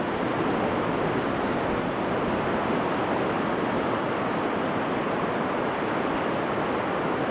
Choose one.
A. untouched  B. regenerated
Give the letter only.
A